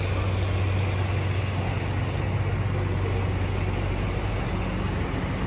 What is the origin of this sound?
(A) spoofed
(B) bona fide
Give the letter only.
B